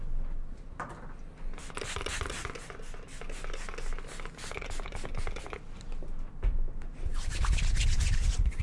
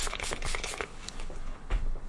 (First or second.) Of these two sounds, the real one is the first